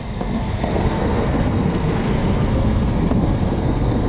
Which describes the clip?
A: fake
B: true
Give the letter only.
A